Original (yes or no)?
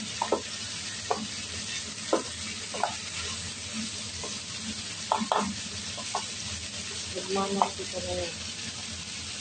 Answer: yes